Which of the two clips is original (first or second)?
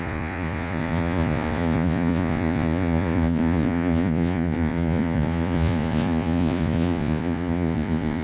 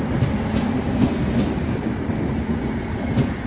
second